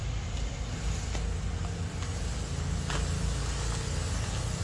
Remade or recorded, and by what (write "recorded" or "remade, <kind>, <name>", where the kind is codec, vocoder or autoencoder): recorded